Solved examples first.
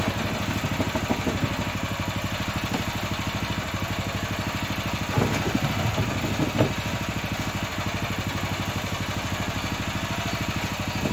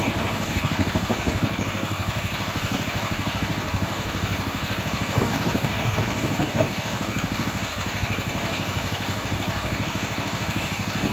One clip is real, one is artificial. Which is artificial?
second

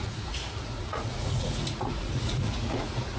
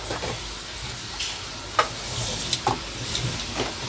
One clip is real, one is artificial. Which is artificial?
first